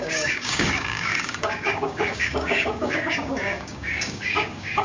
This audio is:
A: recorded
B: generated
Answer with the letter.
B